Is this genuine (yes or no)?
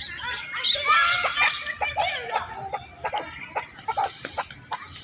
yes